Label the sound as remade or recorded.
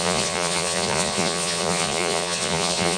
remade